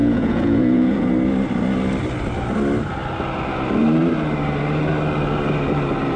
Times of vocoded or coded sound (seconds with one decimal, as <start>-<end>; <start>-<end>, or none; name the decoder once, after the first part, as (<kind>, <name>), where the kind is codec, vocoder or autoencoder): 0.0-1.1 (vocoder, Vocos)